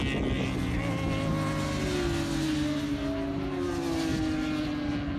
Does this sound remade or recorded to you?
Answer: recorded